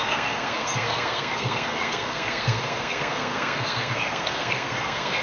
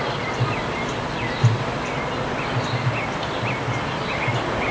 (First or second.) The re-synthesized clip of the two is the first